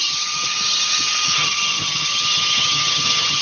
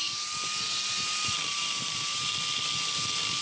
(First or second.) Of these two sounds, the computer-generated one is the first